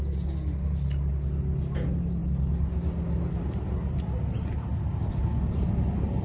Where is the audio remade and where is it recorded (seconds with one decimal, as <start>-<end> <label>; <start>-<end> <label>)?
0.0-6.2 recorded